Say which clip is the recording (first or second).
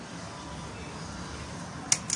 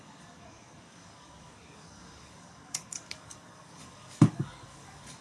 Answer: first